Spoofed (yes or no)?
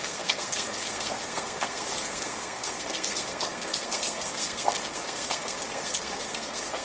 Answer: yes